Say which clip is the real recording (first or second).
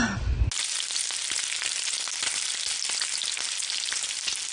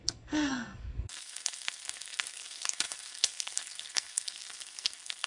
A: first